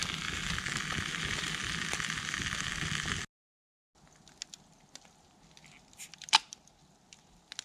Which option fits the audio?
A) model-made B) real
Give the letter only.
B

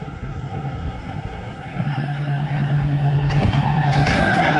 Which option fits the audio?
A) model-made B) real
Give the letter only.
A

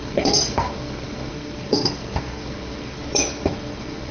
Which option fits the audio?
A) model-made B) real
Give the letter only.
A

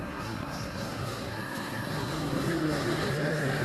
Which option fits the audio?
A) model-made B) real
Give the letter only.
A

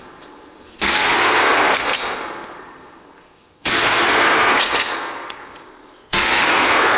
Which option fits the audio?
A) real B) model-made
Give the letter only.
B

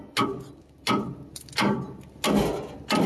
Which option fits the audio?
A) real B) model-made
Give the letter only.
A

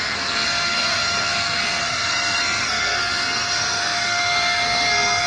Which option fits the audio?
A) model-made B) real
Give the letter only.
A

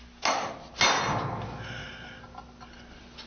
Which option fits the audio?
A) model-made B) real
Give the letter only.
B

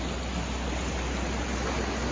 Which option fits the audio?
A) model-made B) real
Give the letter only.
B